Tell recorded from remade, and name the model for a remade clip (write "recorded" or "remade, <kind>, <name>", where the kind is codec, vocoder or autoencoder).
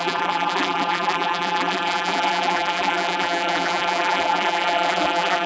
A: remade, vocoder, BigVGAN v2